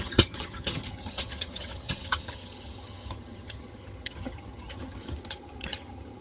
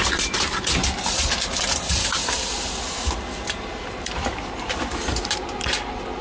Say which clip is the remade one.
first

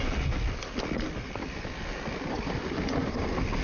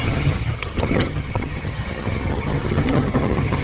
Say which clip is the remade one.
second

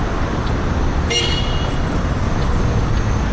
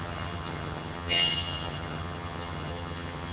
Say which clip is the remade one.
second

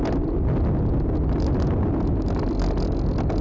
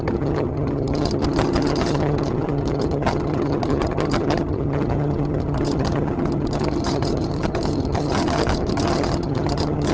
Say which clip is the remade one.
second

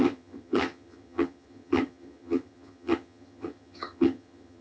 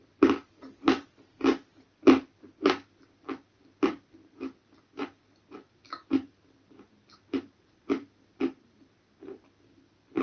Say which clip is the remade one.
first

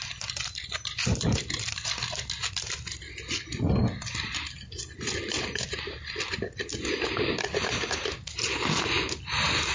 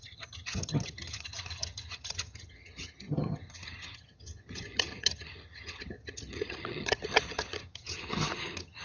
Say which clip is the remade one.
second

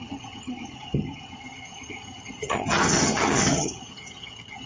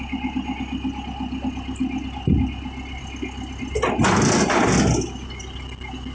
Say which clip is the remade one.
first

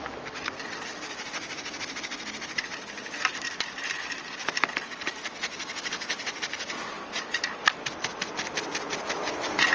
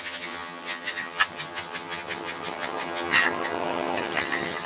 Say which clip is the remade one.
second